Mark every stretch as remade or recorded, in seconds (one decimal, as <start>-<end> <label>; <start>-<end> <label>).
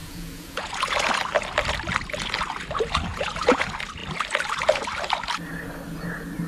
0.0-0.7 remade; 0.7-3.1 recorded; 3.1-3.6 remade; 3.6-6.5 recorded